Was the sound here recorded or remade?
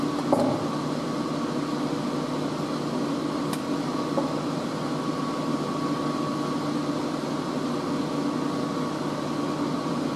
recorded